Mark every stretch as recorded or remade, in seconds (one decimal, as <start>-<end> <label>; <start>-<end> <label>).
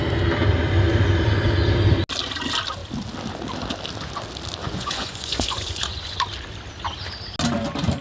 0.0-4.6 recorded; 4.6-6.2 remade; 6.2-8.0 recorded